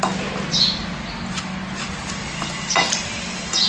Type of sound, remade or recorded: recorded